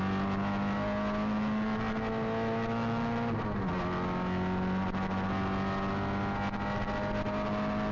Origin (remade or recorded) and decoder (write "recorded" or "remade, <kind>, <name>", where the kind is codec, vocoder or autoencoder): recorded